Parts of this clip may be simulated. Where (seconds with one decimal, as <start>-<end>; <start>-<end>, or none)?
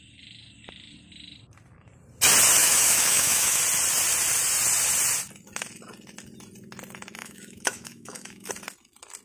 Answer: 2.6-3.6; 7.2-8.5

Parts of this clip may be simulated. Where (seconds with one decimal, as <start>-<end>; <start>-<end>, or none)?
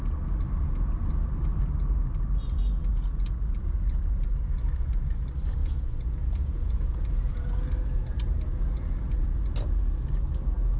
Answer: 2.9-4.0; 5.6-7.3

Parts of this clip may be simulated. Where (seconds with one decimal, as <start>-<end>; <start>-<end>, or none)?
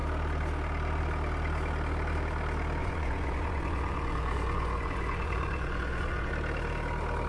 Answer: 2.8-6.3